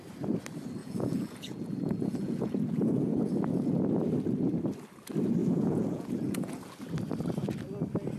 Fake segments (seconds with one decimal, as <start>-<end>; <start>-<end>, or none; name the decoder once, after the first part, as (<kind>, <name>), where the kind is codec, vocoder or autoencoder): 0.8-3.7 (vocoder, Vocos); 5.4-6.6